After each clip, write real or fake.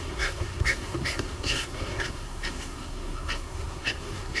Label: fake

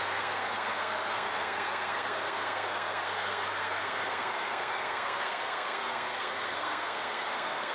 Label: fake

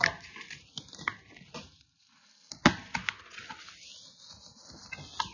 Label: real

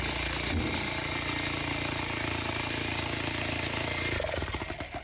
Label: real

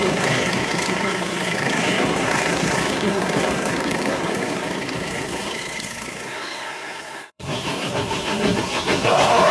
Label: fake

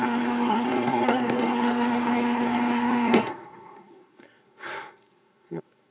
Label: fake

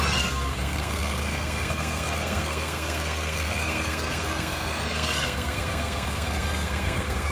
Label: fake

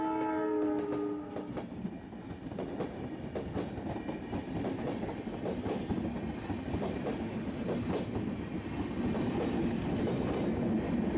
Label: real